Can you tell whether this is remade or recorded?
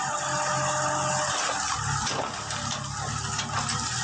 recorded